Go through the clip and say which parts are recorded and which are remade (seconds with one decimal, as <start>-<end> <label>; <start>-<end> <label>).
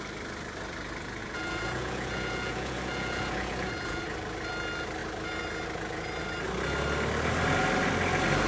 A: 0.0-1.2 recorded; 1.2-4.0 remade; 4.0-8.5 recorded